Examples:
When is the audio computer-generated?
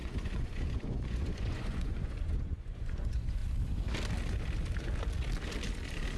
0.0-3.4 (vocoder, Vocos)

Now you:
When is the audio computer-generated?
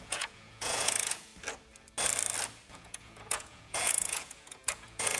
0.0-1.3 (vocoder, Vocos); 2.7-5.2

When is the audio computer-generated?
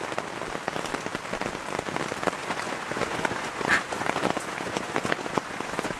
2.4-6.0 (vocoder, Vocos)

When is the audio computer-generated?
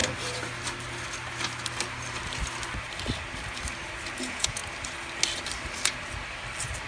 4.1-4.6 (vocoder, Vocos)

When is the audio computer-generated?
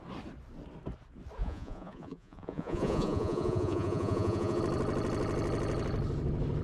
1.4-4.6 (vocoder, Vocos)